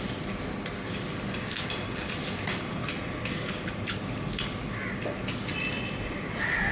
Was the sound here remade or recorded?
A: recorded